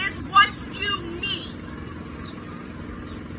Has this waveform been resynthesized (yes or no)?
no